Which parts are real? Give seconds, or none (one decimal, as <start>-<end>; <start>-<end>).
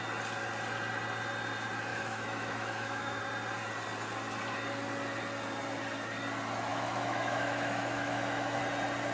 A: 0.0-1.9; 3.2-6.7; 8.6-9.1